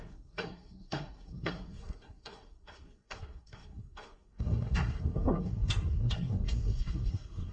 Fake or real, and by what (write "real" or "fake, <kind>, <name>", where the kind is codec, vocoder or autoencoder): fake, codec, SNAC